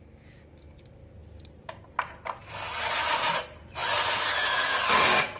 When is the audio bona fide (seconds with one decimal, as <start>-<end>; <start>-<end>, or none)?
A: 0.0-5.4